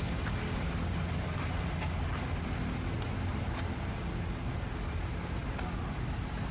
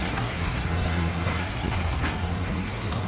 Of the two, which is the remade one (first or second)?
second